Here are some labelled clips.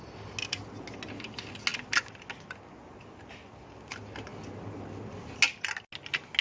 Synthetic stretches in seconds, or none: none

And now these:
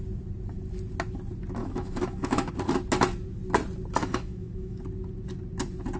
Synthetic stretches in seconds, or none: 1.6-2.5 (autoencoder, DAC-VAE); 4.0-4.8

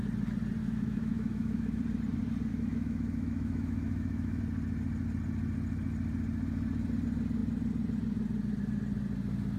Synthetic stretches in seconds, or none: 0.6-1.8 (autoencoder, DAC-VAE); 2.5-4.4

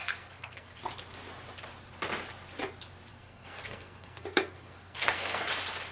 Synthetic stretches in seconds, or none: 0.0-0.8 (codec, SNAC); 3.1-5.5

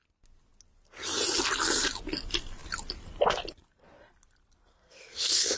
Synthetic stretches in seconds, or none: 4.7-5.6 (codec, SNAC)